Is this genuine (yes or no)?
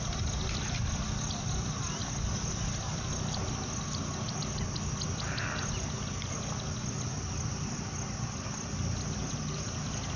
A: yes